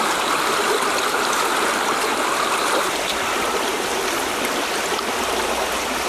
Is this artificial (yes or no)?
no